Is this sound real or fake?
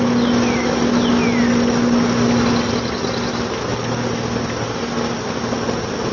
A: real